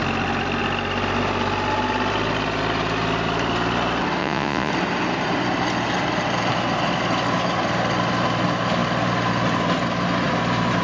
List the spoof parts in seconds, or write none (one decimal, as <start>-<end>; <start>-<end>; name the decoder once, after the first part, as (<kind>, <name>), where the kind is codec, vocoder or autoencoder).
4.2-4.7 (vocoder, Vocos)